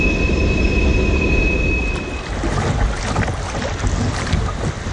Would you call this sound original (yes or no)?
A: yes